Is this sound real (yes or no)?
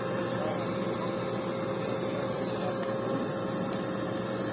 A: yes